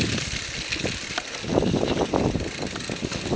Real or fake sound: real